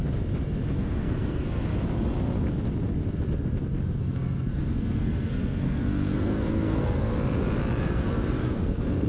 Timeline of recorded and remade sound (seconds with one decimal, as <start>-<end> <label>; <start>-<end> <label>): 0.0-0.7 recorded; 0.7-1.7 remade; 1.7-4.0 recorded; 4.0-7.1 remade; 7.1-7.8 recorded; 7.8-9.1 remade